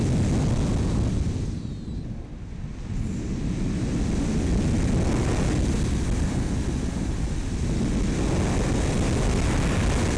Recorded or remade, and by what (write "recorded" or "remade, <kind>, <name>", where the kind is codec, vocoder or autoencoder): recorded